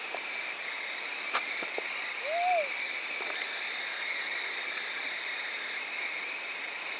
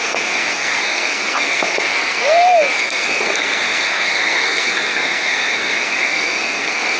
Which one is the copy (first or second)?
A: second